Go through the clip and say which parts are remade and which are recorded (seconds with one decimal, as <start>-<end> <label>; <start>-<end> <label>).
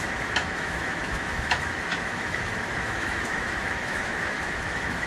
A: 0.0-5.1 remade